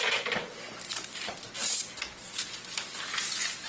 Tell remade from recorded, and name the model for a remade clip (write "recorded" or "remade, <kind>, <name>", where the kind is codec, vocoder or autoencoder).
recorded